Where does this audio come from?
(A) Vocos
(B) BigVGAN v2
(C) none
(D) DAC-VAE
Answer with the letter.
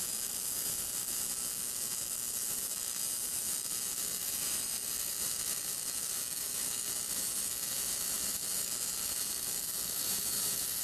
D